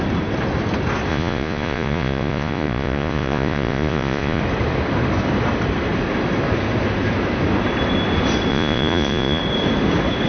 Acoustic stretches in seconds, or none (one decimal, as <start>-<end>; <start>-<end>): 0.0-1.1; 4.4-8.5; 9.4-10.3